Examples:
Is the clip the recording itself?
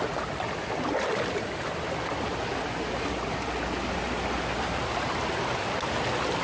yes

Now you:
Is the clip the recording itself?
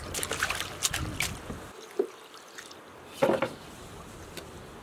no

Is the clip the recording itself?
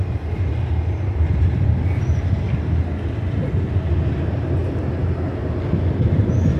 yes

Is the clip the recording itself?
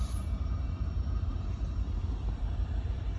no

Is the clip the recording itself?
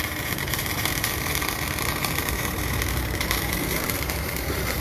no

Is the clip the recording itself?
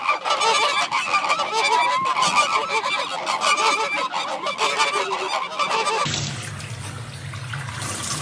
yes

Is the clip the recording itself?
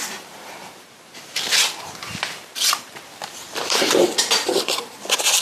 no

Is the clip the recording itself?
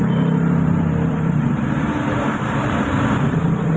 no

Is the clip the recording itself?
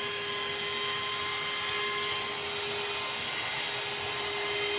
yes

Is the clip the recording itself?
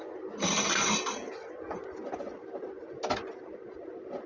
yes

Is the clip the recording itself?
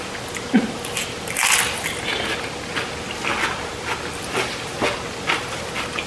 yes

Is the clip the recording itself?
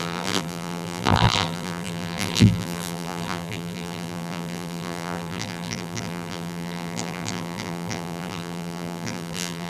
no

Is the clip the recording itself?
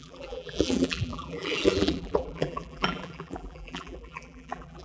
no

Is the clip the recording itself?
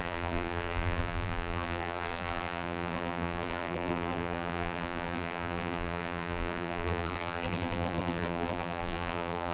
no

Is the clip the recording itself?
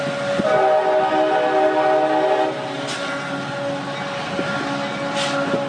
yes